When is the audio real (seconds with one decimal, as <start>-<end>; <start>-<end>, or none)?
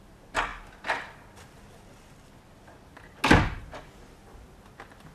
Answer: 0.0-5.1